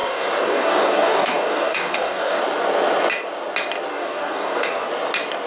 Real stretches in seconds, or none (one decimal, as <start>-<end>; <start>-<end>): 2.4-3.9; 4.9-5.5